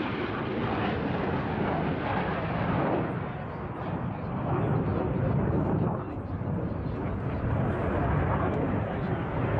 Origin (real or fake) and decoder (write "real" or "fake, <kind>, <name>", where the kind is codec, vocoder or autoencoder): real